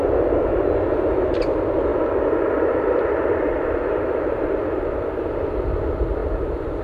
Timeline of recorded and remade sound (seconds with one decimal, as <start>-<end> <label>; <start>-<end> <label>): 0.0-1.9 recorded; 1.9-4.8 remade; 4.8-6.2 recorded; 6.2-6.8 remade